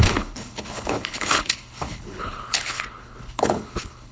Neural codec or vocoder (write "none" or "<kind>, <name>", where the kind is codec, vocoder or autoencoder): codec, HILCodec